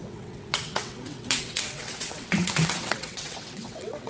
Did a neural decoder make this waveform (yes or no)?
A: yes